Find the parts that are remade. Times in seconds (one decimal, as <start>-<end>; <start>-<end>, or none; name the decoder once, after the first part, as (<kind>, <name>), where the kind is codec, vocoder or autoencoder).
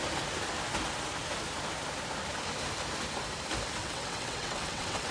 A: 3.8-5.1 (vocoder, WaveNeXt)